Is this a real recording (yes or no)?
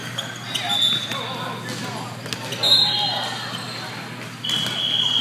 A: yes